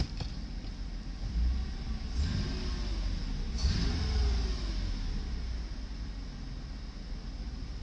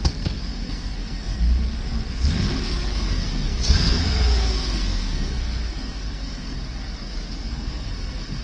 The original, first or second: first